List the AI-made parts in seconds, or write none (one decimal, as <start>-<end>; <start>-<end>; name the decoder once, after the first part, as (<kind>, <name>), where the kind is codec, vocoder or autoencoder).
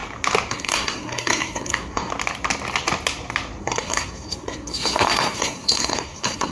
0.5-2.1 (codec, SNAC); 3.6-6.5